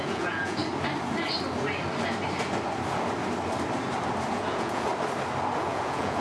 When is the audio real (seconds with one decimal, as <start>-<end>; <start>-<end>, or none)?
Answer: 0.6-4.3; 4.9-5.6